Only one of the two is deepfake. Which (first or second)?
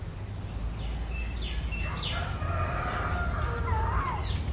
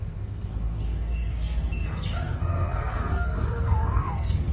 second